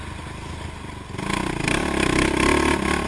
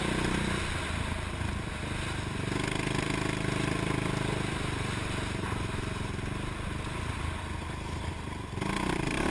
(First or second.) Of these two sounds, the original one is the first